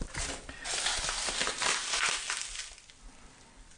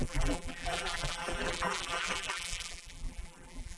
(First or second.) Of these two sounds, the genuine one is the first